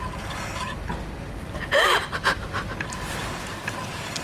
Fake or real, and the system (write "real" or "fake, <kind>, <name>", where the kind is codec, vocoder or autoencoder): real